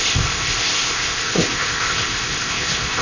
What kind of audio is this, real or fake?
fake